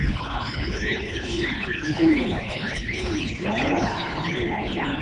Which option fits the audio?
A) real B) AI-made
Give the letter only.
B